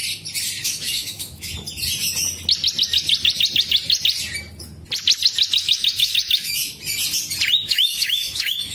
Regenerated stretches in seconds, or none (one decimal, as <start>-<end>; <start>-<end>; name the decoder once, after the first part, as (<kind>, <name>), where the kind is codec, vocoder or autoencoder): 0.6-1.5 (autoencoder, DAC-VAE); 5.6-6.7; 7.6-8.7